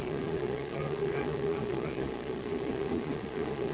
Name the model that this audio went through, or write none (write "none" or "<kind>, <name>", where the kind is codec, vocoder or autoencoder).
vocoder, Vocos